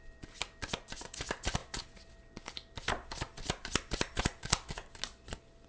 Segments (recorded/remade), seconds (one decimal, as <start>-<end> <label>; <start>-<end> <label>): 0.0-5.7 recorded